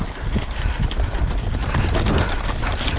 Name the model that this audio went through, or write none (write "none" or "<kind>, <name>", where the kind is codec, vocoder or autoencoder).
none